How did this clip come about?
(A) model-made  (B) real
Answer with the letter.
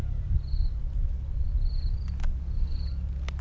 B